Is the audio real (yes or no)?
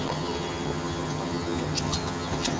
no